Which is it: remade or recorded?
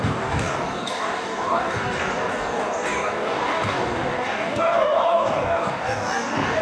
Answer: remade